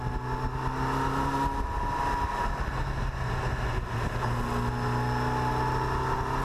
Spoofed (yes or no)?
no